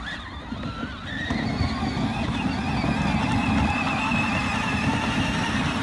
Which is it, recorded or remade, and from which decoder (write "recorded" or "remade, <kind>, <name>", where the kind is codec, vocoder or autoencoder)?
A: recorded